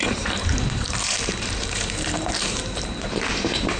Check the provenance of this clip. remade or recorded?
remade